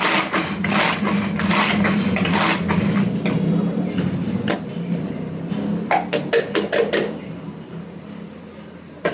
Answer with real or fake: real